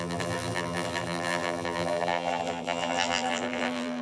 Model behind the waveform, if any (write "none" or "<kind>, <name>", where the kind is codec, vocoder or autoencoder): vocoder, BigVGAN v2